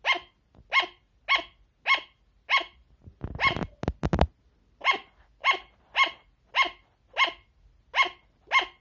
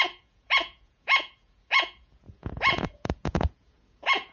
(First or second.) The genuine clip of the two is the first